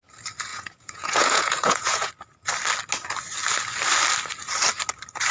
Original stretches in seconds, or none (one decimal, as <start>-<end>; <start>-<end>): 0.0-0.5; 2.1-5.3